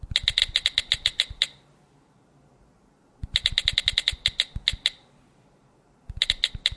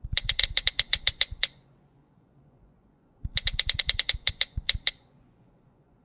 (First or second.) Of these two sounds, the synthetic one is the second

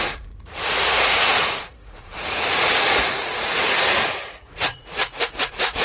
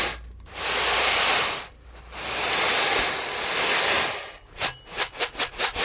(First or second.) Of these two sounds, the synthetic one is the first